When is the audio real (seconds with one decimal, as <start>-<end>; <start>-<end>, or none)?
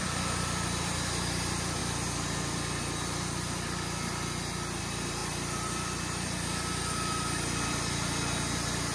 1.8-4.8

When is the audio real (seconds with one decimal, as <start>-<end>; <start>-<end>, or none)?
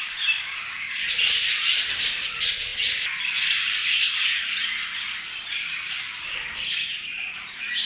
none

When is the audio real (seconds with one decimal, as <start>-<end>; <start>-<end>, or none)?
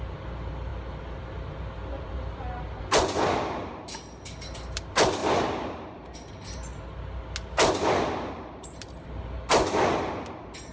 0.0-10.7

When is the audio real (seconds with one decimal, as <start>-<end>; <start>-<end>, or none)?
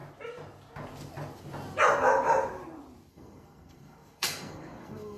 0.0-3.1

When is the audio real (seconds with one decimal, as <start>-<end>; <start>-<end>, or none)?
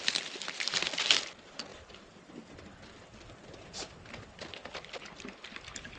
0.0-1.7; 5.2-6.0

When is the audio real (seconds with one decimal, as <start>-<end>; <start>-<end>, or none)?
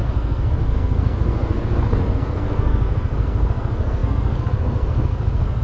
none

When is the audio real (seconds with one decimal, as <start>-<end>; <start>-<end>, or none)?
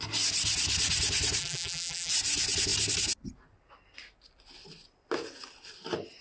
0.0-1.4; 2.1-6.2